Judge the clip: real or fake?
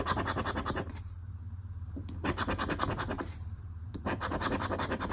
fake